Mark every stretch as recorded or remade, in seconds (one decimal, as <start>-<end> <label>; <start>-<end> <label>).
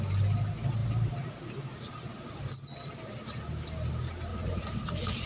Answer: 0.0-4.3 recorded; 4.3-5.3 remade